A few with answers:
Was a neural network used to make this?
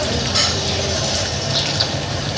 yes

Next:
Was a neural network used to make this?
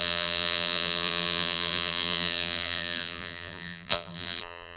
yes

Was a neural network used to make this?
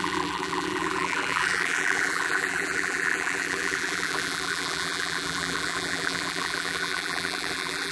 yes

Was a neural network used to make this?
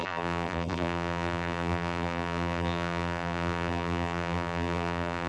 yes